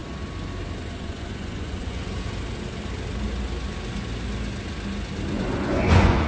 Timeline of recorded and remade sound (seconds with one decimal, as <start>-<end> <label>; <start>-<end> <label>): 0.0-0.8 recorded; 0.8-2.0 remade; 2.0-5.3 recorded; 5.3-6.3 remade